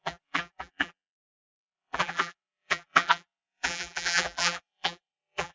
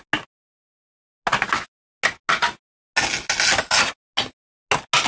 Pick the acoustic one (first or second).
second